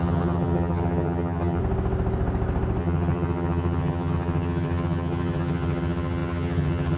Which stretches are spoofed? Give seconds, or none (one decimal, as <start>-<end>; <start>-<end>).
0.0-1.6; 2.8-7.0